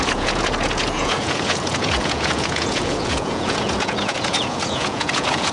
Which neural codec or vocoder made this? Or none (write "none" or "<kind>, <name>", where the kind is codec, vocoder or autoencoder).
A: vocoder, Vocos